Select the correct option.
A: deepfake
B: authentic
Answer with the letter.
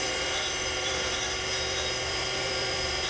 A